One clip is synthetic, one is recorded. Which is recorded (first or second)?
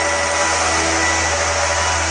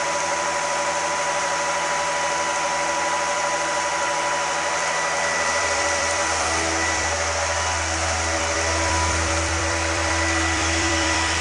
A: first